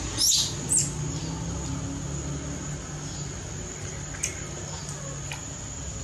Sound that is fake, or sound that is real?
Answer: real